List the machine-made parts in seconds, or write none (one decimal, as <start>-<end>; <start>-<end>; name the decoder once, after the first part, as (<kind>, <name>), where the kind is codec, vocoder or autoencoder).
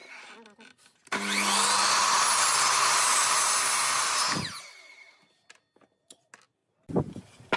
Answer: none